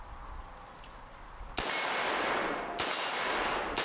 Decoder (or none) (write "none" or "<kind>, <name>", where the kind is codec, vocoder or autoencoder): none